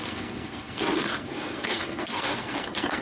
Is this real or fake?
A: fake